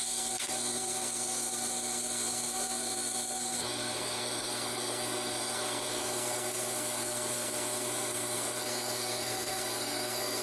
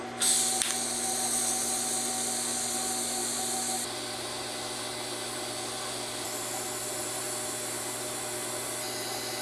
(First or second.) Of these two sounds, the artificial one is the first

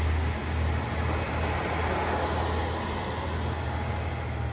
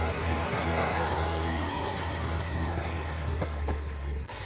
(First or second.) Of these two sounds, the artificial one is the second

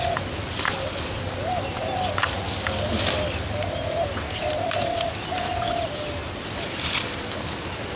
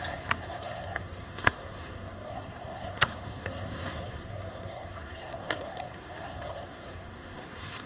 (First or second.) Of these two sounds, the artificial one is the second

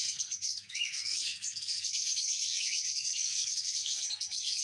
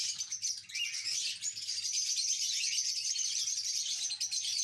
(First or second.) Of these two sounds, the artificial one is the first